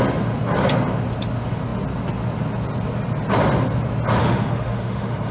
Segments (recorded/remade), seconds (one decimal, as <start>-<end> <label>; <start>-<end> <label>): 0.0-4.2 recorded; 4.2-5.3 remade